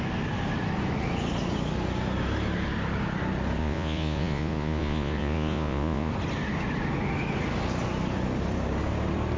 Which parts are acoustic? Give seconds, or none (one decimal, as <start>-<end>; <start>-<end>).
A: 0.0-3.6; 6.1-9.4